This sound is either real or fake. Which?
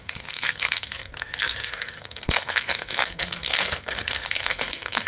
fake